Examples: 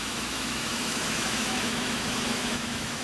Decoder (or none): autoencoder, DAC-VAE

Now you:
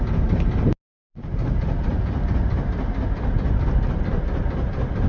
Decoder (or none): none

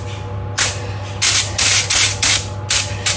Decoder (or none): none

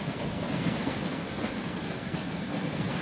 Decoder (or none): codec, SNAC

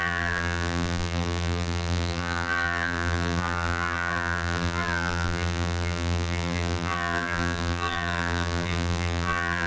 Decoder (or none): vocoder, BigVGAN v2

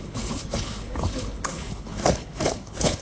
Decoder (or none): codec, HILCodec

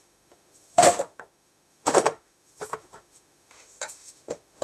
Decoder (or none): autoencoder, DAC-VAE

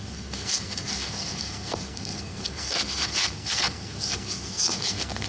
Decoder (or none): codec, SNAC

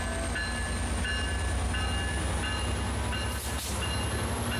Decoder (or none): none